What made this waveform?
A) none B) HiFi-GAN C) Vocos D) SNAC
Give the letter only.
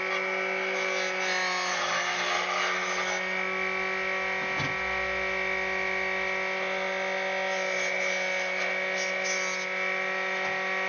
A